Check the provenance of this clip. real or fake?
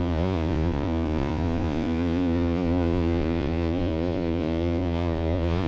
fake